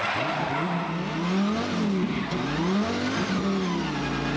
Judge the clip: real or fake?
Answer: real